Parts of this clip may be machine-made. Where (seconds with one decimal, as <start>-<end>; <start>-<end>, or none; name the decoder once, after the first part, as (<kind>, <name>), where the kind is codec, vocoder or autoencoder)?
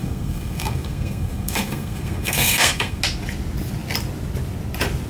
0.0-3.0 (codec, SNAC)